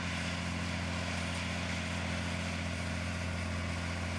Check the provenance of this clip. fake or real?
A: real